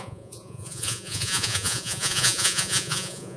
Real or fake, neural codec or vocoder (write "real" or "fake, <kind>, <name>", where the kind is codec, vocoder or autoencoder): fake, vocoder, Vocos